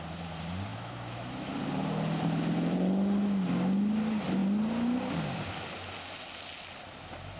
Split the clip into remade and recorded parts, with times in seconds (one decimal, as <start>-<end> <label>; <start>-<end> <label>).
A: 0.0-0.7 recorded; 0.7-1.5 remade; 1.5-7.4 recorded